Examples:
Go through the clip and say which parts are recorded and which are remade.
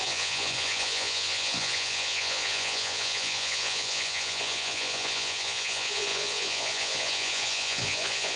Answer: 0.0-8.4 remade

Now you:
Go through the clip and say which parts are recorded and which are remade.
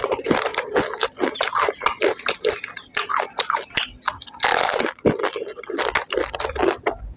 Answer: 0.0-7.2 recorded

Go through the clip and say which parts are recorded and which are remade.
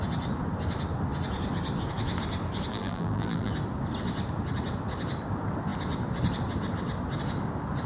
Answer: 0.0-2.7 recorded; 2.7-3.5 remade; 3.5-7.9 recorded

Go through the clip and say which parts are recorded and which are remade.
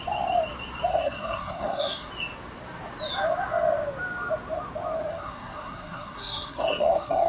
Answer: 0.0-0.9 recorded; 0.9-2.1 remade; 2.1-5.1 recorded; 5.1-7.3 remade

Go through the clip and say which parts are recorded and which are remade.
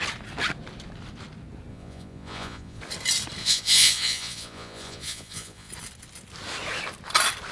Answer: 0.0-1.7 recorded; 1.7-2.8 remade; 2.8-3.4 recorded; 3.4-5.7 remade; 5.7-7.5 recorded